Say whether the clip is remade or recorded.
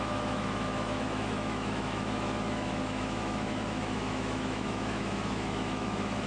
remade